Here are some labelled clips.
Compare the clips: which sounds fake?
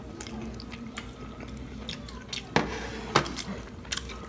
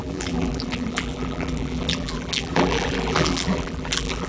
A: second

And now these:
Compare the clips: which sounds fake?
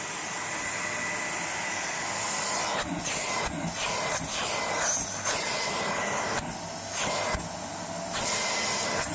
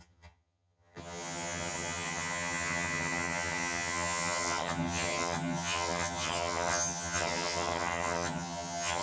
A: second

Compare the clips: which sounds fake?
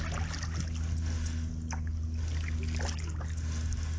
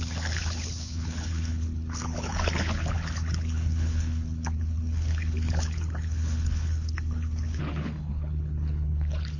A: second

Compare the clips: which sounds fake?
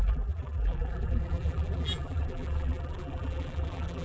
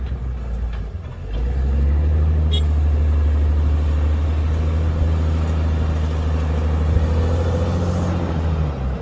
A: first